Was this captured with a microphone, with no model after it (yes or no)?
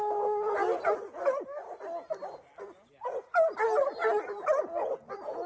yes